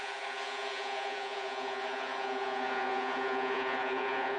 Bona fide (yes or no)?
no